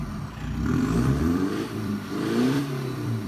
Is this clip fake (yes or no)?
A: yes